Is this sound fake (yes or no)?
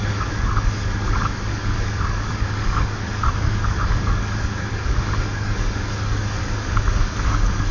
yes